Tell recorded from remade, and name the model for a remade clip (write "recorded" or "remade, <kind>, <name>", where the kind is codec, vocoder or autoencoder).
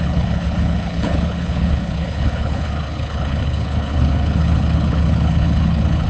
remade, codec, HILCodec